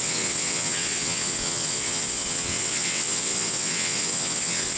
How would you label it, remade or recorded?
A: remade